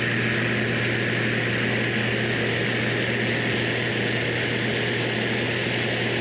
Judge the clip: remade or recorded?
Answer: recorded